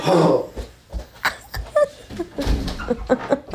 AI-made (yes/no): yes